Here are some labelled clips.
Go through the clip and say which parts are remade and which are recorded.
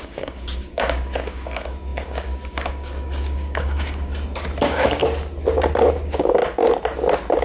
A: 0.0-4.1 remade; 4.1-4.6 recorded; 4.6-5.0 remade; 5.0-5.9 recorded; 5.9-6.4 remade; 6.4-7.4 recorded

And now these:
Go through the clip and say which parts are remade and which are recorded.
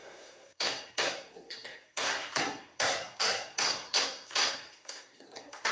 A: 0.0-5.7 remade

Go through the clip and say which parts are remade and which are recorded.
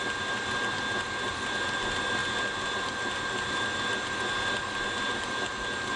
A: 0.0-6.0 recorded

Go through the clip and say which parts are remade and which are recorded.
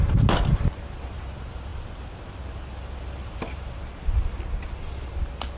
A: 0.0-5.6 recorded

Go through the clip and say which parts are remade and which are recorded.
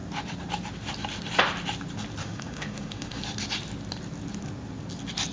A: 0.0-2.2 recorded; 2.2-3.2 remade; 3.2-5.3 recorded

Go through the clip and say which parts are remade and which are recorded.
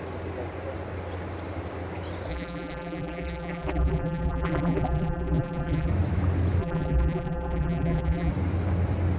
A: 0.0-2.3 recorded; 2.3-5.9 remade; 5.9-6.6 recorded; 6.6-8.3 remade; 8.3-9.2 recorded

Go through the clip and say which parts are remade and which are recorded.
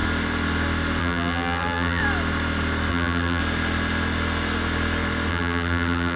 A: 0.0-1.0 recorded; 1.0-2.0 remade; 2.0-2.9 recorded; 2.9-3.4 remade; 3.4-5.3 recorded; 5.3-6.2 remade